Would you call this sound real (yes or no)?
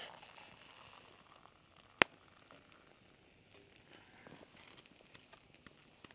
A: yes